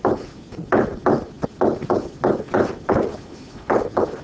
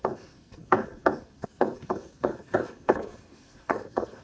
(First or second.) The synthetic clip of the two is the second